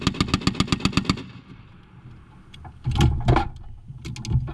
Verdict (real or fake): real